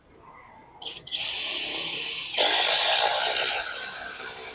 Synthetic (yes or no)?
no